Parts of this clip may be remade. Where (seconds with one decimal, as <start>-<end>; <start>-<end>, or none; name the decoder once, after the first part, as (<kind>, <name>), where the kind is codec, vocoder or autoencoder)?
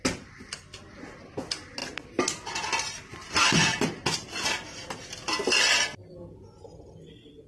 none